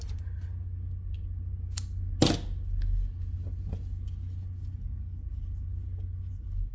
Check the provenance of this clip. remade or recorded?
recorded